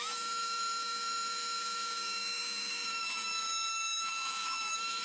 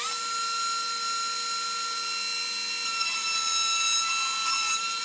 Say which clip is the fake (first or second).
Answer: first